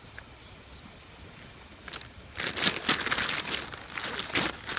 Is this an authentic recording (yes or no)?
yes